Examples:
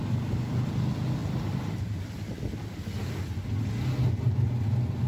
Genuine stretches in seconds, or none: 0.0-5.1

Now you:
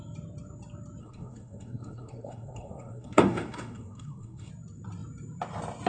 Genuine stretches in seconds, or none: 0.0-1.0; 4.5-5.9

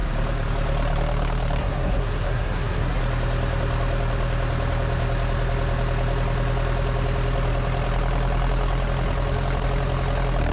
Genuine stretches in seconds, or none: 0.0-1.6; 3.0-10.5

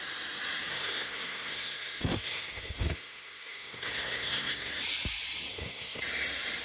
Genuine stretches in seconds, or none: 0.0-0.7; 4.7-5.5; 6.0-6.6

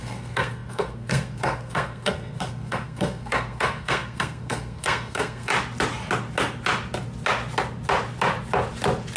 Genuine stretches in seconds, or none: 5.5-9.2

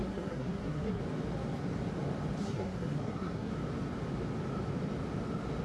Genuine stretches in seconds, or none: 1.0-2.4; 3.5-5.6